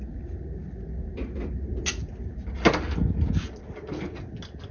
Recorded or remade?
recorded